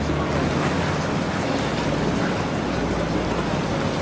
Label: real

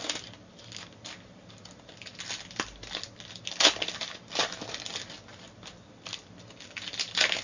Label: real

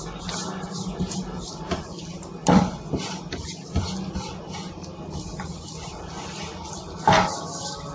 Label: real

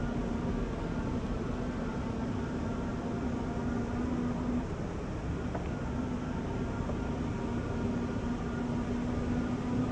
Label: real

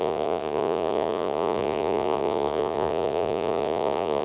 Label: fake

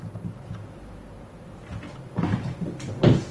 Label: real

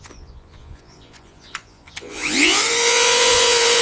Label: fake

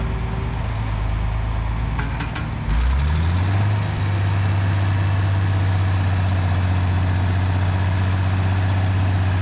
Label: real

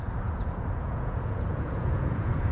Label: fake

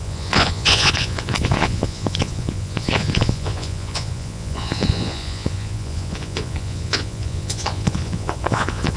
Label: fake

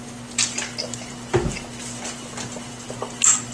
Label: real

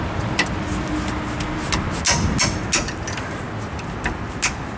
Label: real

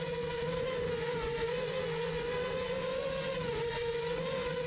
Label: fake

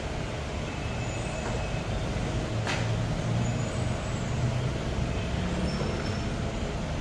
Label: real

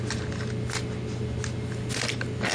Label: real